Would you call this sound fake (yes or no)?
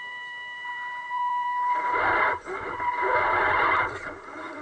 yes